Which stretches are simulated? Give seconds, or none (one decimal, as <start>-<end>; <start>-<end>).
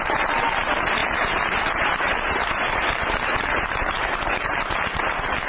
0.0-5.5